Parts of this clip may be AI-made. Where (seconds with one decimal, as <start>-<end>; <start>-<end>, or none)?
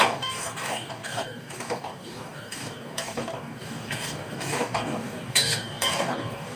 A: 0.0-6.6